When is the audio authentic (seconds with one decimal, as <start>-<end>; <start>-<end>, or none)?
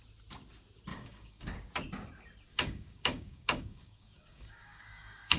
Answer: 0.0-0.9; 1.7-2.5